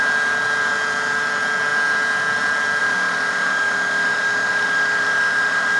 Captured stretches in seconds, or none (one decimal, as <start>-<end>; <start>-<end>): 0.0-2.8